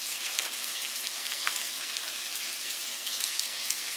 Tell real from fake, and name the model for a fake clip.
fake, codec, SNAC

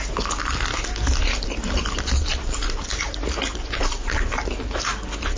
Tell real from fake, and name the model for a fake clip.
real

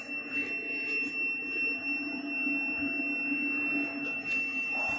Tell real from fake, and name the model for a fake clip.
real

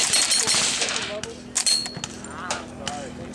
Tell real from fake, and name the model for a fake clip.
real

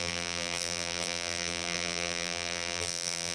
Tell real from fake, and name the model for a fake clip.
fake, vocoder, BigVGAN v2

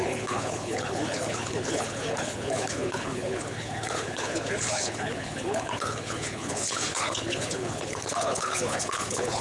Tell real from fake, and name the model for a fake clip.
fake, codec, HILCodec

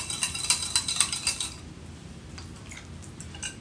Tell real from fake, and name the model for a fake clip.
real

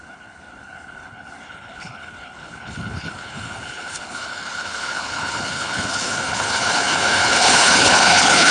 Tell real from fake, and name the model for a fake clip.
fake, codec, HILCodec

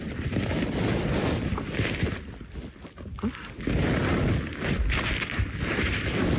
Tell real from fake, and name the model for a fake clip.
real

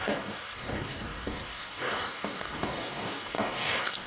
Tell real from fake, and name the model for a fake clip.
fake, codec, DAC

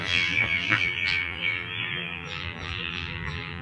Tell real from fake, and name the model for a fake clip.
fake, vocoder, BigVGAN v2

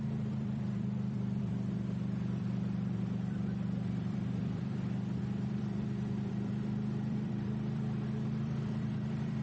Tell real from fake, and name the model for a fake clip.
fake, vocoder, BigVGAN v2